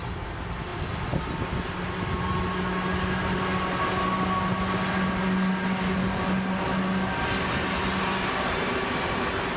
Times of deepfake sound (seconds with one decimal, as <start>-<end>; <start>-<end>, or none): none